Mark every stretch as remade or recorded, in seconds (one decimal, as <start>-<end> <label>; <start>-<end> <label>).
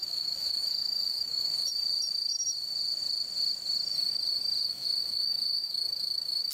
0.0-1.7 remade; 1.7-4.6 recorded; 4.6-6.5 remade